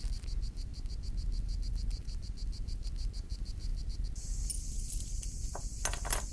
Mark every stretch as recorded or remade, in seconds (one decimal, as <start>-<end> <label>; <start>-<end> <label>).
0.0-6.3 recorded